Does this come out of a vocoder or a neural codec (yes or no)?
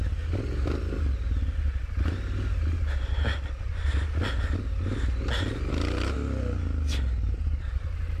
no